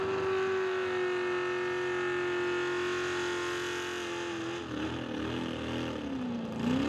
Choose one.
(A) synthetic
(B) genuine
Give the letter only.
B